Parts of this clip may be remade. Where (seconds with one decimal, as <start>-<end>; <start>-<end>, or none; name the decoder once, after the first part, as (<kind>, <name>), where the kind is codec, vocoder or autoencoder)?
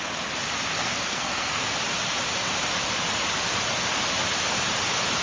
0.8-1.6 (codec, SNAC)